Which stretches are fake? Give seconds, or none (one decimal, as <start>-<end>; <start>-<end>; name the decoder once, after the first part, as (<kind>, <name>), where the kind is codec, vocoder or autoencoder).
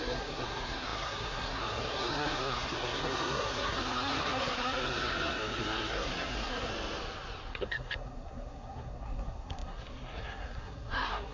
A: 0.0-6.7 (codec, SNAC); 7.5-11.3